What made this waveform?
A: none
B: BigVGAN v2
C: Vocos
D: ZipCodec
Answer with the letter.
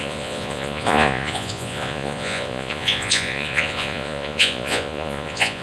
C